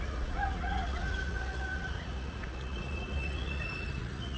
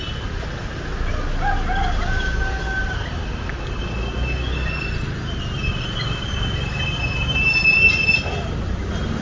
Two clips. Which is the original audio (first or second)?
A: second